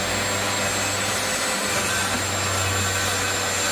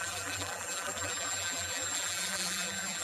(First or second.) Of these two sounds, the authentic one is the first